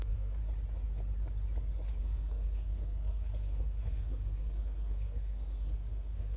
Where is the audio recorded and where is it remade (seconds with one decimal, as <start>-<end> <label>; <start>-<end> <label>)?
0.0-0.4 remade; 0.4-2.0 recorded; 2.0-6.4 remade